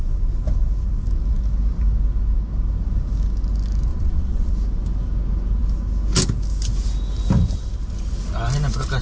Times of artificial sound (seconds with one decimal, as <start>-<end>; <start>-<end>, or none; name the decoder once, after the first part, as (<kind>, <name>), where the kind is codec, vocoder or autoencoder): 3.9-4.5 (vocoder, WaveNeXt)